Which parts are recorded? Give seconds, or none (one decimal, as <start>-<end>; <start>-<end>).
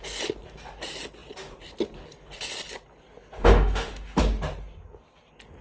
0.0-3.4; 4.2-5.6